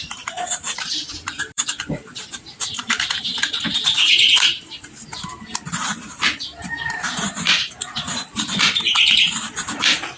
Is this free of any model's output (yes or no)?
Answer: no